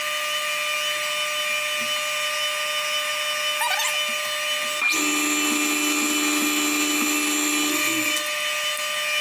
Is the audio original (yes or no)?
yes